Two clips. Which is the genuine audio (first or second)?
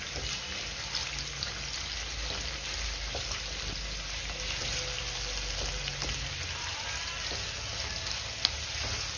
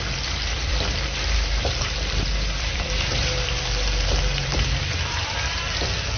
first